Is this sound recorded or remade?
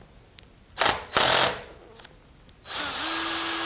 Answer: recorded